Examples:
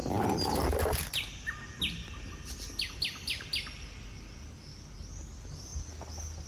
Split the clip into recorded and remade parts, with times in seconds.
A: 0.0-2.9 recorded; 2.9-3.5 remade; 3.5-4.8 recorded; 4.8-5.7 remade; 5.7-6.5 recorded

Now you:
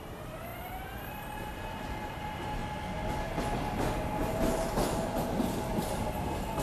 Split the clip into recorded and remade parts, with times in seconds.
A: 0.0-2.6 remade; 2.6-6.6 recorded

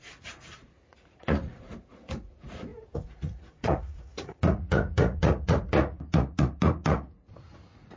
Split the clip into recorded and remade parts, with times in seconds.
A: 0.0-8.0 remade